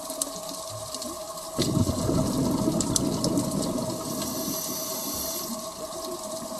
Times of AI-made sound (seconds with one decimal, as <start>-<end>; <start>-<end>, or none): 0.0-1.2; 5.2-6.6